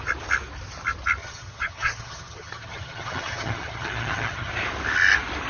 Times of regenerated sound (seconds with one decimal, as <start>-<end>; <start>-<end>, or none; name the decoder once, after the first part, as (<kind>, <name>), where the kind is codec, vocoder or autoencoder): 1.2-4.5 (vocoder, HiFi-GAN)